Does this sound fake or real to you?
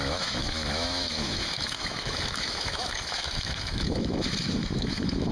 fake